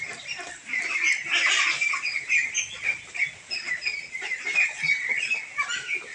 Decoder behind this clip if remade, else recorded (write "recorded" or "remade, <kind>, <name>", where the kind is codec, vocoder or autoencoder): recorded